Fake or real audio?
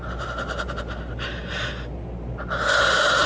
real